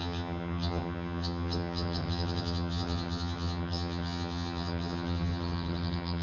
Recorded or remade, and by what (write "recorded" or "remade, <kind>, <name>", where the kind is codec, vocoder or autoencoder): remade, vocoder, HiFi-GAN